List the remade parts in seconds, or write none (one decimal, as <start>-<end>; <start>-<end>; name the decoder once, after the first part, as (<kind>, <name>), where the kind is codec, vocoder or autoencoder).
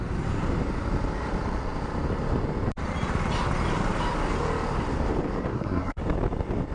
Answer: 5.5-6.0 (codec, SNAC)